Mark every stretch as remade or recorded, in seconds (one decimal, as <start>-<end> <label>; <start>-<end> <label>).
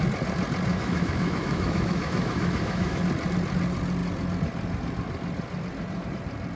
0.0-0.7 recorded; 0.7-3.0 remade; 3.0-6.6 recorded